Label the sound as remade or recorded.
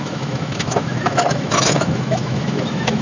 remade